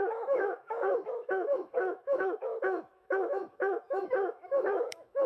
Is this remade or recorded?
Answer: remade